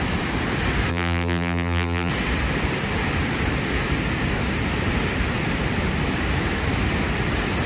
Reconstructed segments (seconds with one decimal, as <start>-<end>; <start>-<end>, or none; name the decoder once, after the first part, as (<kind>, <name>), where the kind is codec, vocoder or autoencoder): 0.9-2.1 (vocoder, BigVGAN v2)